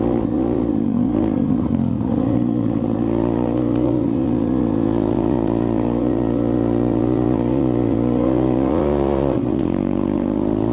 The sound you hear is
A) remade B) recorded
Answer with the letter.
A